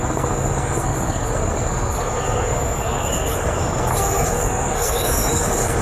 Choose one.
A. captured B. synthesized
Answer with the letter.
B